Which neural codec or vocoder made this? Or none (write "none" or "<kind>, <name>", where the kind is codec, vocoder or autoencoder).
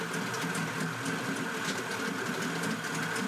none